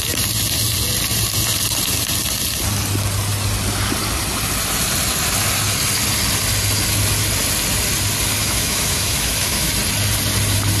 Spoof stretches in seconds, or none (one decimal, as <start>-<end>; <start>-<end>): 8.4-9.7